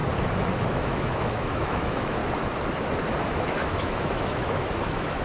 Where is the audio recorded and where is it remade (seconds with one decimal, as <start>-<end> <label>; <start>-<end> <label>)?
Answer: 0.0-0.6 recorded; 0.6-2.2 remade; 2.2-3.2 recorded; 3.2-5.2 remade